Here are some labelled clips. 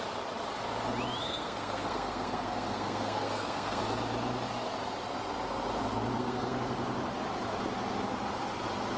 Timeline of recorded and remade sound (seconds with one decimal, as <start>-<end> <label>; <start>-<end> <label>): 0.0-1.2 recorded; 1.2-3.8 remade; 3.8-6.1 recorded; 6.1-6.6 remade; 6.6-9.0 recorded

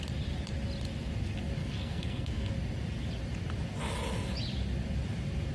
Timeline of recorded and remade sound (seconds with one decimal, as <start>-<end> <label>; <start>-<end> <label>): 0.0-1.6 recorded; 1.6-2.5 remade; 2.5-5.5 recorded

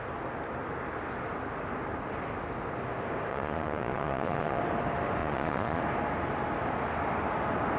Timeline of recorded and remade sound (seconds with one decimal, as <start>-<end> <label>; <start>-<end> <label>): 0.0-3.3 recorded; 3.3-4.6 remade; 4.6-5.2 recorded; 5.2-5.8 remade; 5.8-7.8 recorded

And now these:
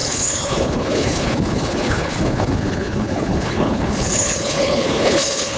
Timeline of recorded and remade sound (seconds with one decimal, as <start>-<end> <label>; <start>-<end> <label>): 0.0-5.6 remade

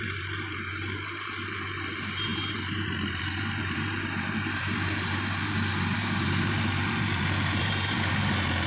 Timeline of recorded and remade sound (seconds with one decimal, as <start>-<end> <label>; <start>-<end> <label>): 0.0-8.7 remade

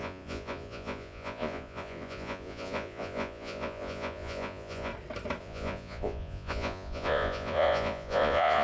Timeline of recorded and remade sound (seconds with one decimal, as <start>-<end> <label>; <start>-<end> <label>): 0.0-4.9 remade; 4.9-5.4 recorded; 5.4-8.6 remade